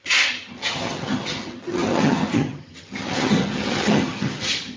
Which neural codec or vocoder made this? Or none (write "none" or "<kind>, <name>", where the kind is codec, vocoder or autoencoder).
vocoder, HiFi-GAN